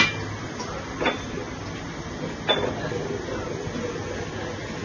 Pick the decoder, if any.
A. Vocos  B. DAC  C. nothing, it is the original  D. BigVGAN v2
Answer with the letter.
C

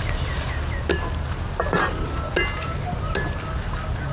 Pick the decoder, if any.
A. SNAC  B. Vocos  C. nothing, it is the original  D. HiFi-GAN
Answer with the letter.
C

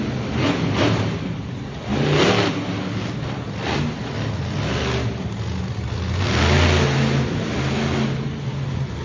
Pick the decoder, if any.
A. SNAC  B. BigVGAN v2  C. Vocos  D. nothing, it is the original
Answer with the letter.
D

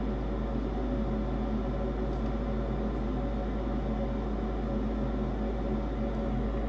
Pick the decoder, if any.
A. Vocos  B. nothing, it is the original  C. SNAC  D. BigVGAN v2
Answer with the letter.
B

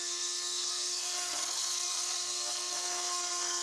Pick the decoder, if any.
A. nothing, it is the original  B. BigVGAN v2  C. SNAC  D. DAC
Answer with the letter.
C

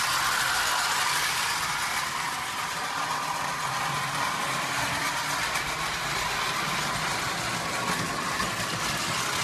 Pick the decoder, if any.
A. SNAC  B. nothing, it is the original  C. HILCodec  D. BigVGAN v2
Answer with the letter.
B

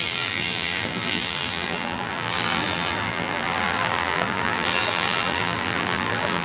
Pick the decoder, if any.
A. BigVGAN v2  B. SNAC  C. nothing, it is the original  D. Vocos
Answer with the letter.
A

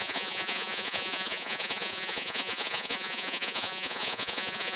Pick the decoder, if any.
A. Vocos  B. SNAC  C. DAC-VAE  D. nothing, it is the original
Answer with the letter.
A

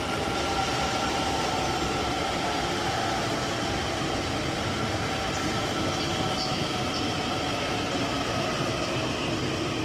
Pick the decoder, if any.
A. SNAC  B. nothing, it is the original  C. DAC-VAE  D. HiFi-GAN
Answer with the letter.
B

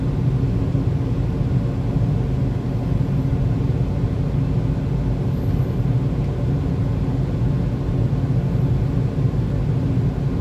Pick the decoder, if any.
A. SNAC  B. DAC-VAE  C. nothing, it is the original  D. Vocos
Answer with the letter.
C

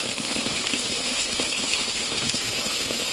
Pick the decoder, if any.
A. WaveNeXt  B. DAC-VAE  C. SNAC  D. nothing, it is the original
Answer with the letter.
B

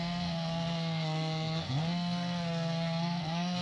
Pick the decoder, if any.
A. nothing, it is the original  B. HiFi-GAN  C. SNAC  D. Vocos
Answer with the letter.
C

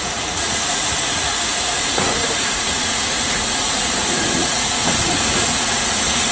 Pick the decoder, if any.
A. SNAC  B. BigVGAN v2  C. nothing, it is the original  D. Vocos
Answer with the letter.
D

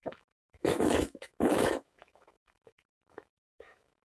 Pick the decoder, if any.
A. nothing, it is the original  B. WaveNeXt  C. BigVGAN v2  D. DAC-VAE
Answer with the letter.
D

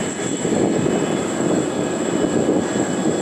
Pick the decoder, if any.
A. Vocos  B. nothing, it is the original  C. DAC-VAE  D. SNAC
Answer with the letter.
B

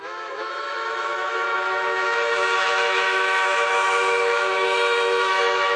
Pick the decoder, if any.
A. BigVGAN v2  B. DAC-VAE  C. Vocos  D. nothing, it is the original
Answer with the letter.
B